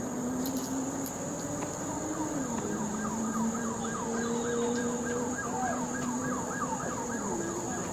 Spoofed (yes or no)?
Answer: yes